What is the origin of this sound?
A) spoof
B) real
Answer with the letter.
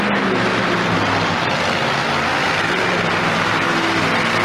B